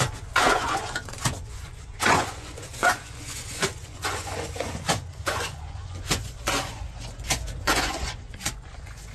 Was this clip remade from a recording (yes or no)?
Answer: yes